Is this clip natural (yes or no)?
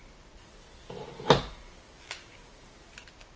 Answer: yes